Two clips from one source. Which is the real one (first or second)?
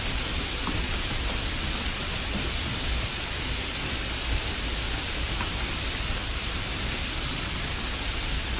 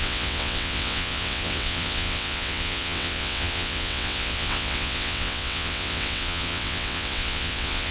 first